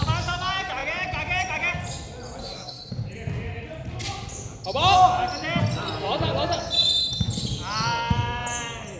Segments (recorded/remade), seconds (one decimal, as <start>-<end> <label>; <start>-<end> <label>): 0.0-2.4 recorded; 2.4-2.9 remade; 2.9-9.0 recorded